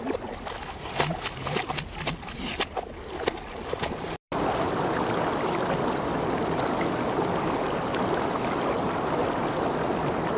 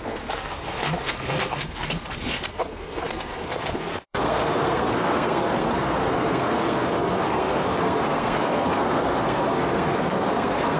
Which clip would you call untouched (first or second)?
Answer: first